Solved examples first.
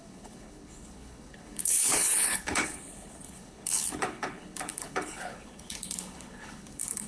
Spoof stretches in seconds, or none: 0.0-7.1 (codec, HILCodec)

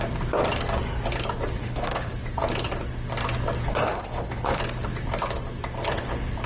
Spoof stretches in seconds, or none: 1.6-2.1 (codec, HILCodec); 3.7-4.6

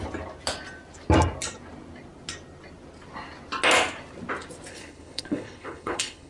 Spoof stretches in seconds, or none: 4.7-6.3 (codec, HILCodec)

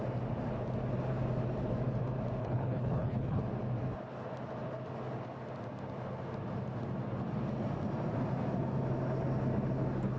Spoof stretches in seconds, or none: 2.4-3.4 (codec, HILCodec)

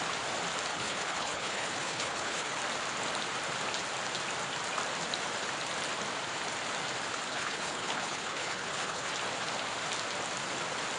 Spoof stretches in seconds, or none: 0.7-2.6 (codec, HILCodec); 7.3-9.1

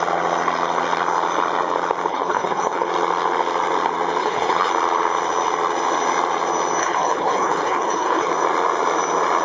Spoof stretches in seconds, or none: 2.1-2.9 (codec, HILCodec); 4.2-4.7; 6.8-8.3